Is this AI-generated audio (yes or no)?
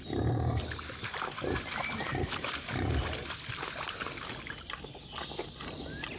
no